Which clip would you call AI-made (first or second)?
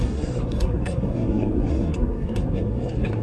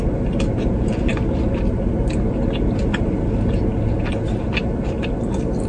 first